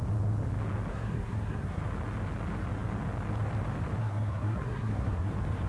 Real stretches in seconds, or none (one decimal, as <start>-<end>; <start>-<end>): 0.0-0.9; 1.8-4.0; 5.3-5.7